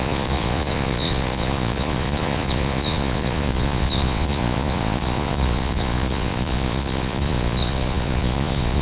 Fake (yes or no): yes